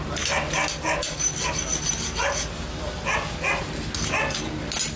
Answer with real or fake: real